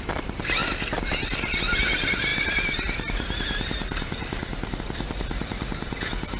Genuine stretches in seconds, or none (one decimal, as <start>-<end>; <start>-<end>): 0.0-2.3; 4.8-6.4